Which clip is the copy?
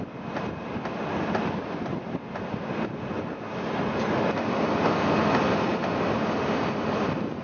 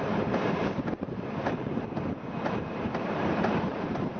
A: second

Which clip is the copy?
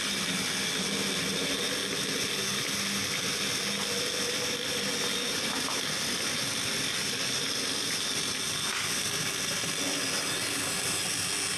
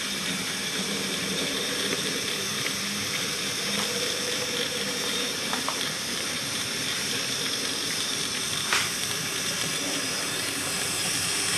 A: second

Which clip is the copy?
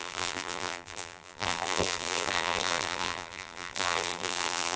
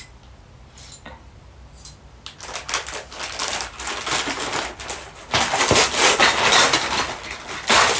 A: first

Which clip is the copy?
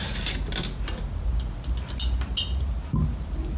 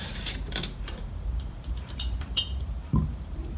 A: second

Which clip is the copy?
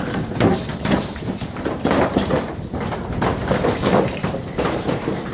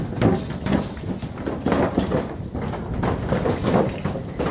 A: first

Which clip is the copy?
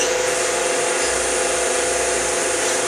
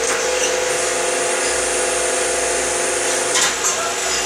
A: first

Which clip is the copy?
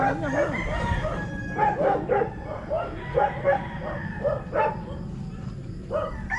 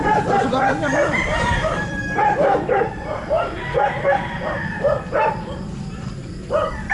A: second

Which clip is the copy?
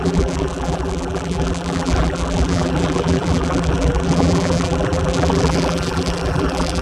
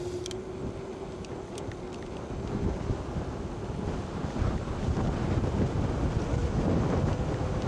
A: first